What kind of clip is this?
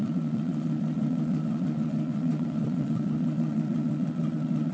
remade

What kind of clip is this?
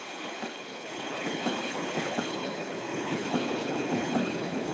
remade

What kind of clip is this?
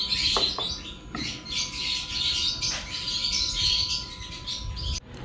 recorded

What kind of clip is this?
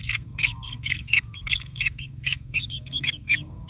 remade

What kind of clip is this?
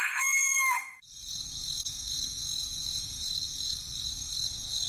remade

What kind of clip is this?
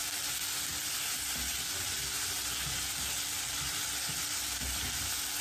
recorded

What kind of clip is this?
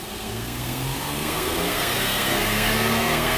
remade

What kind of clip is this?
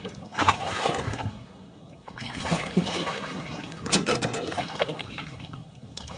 remade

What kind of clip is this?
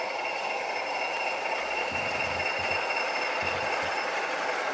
recorded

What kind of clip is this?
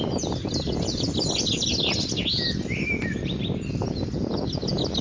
recorded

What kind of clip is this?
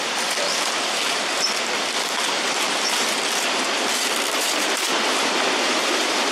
remade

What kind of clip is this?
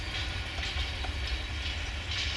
recorded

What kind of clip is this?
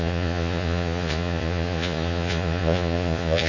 remade